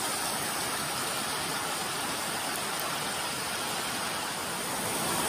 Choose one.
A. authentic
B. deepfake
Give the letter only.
A